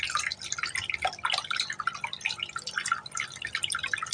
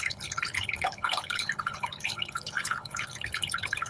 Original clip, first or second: first